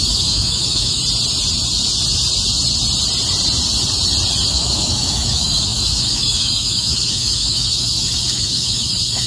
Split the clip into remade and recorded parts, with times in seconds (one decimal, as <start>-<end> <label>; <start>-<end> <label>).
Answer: 0.0-1.0 remade; 1.0-4.5 recorded; 4.5-9.3 remade